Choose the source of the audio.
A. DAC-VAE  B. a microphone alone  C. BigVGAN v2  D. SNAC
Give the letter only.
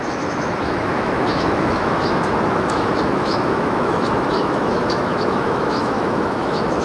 A